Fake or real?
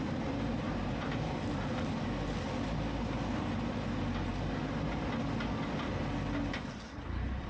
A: real